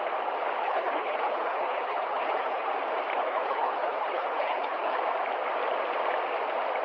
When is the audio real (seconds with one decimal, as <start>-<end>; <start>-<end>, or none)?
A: 0.0-0.6; 2.7-3.1; 5.0-6.8